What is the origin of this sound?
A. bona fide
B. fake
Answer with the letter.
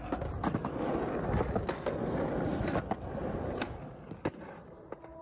A